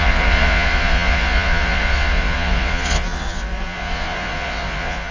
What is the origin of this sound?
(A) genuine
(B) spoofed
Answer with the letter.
B